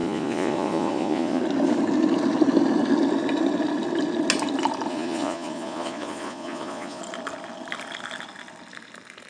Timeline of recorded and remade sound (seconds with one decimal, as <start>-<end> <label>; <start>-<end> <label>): 0.0-1.4 remade; 1.4-4.9 recorded; 4.9-7.0 remade; 7.0-9.3 recorded